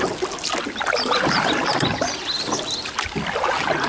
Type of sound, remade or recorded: recorded